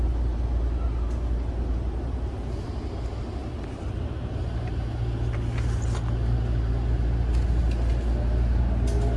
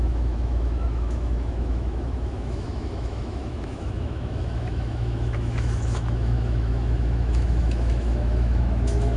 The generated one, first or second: second